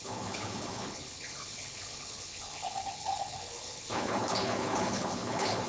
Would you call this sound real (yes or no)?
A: no